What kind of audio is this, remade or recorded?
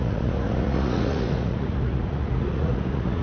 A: remade